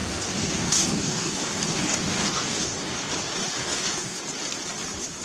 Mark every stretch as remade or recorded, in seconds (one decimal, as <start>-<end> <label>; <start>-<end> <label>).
0.0-3.1 remade; 3.1-3.6 recorded; 3.6-4.2 remade; 4.2-5.2 recorded